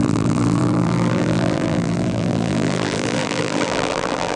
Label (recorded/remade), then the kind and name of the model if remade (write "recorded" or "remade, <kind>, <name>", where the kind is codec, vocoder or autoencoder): remade, vocoder, BigVGAN v2